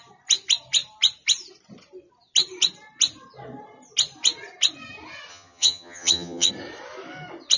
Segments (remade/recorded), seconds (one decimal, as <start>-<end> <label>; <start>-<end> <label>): 0.0-5.3 recorded; 5.3-6.5 remade; 6.5-7.6 recorded